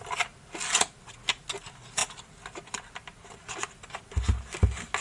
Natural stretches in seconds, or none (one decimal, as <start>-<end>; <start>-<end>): 0.0-5.0